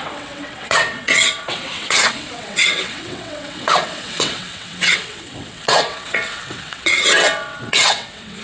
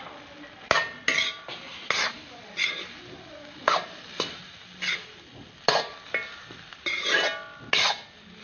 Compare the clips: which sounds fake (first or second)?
first